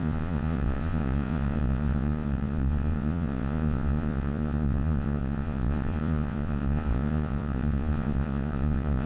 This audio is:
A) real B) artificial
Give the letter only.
B